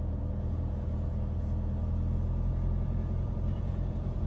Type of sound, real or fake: fake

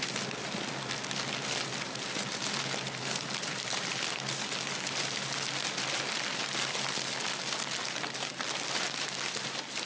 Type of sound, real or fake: real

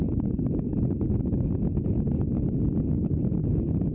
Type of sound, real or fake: real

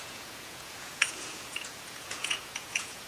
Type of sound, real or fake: fake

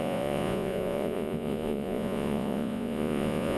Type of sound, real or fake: fake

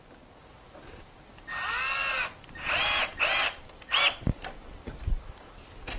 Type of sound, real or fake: real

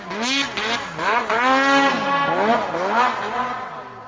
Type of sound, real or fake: real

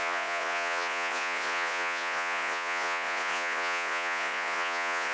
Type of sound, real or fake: fake